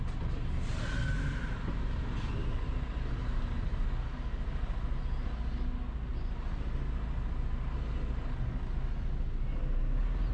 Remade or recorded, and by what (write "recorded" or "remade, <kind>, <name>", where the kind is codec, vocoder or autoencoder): recorded